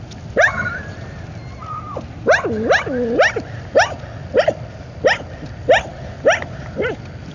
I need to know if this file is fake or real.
real